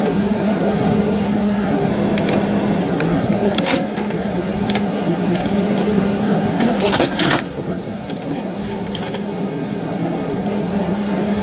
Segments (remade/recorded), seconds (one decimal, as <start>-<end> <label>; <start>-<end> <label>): 0.0-1.9 remade; 1.9-2.8 recorded; 2.8-11.4 remade